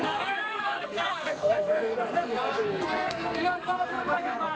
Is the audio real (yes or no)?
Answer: no